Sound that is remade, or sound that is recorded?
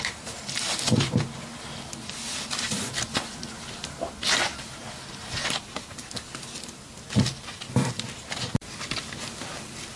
recorded